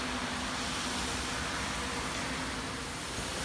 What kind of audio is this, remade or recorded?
recorded